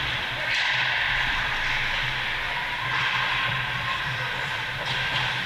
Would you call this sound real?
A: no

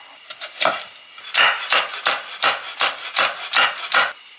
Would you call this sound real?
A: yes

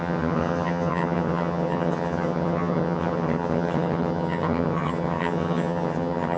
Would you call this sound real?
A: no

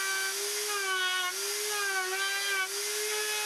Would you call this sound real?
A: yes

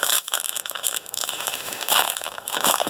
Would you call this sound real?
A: no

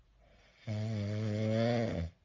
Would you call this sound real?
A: yes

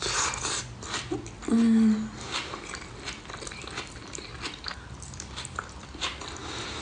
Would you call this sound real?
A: yes